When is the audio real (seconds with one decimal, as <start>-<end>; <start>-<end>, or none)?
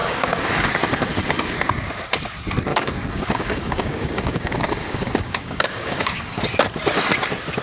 0.7-2.7; 6.4-7.6